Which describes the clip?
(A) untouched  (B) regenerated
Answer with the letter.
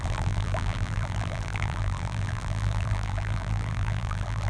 B